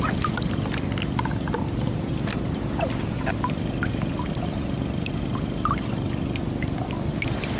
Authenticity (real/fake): real